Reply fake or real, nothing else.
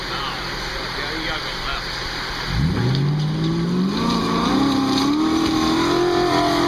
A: real